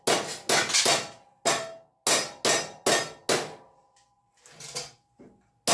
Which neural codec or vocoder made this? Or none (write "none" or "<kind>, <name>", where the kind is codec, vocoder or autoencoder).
none